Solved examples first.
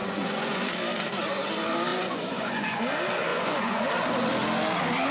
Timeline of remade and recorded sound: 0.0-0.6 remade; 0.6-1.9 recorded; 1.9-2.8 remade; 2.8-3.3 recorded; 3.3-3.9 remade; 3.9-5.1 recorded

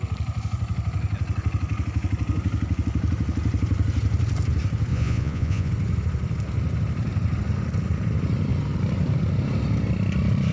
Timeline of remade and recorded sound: 0.0-4.9 recorded; 4.9-5.7 remade; 5.7-10.5 recorded

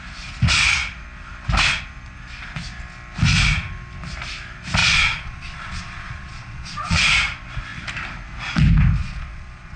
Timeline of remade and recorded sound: 0.0-4.8 recorded; 4.8-7.0 remade; 7.0-9.0 recorded; 9.0-9.8 remade

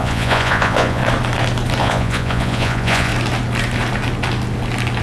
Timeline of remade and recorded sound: 0.0-1.0 remade; 1.0-1.8 recorded; 1.8-3.1 remade; 3.1-5.0 recorded